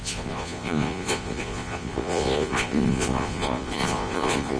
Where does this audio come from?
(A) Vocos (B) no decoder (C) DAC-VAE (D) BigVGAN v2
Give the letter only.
A